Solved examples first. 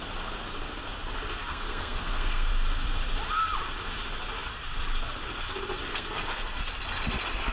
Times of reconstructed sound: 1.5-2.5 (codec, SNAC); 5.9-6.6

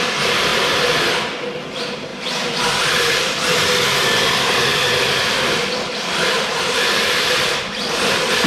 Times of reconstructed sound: 0.0-0.5 (vocoder, BigVGAN v2); 1.7-8.5

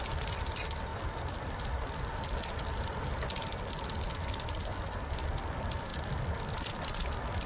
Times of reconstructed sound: none